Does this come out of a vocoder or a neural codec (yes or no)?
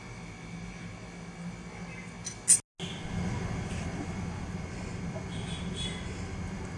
no